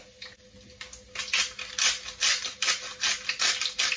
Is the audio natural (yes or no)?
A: yes